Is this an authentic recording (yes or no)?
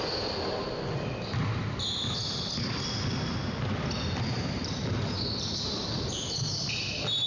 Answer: yes